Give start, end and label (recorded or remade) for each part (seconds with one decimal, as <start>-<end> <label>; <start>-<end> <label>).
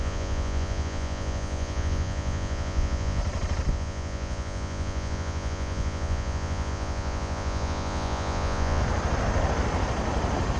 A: 0.0-3.2 remade; 3.2-3.7 recorded; 3.7-8.8 remade; 8.8-10.6 recorded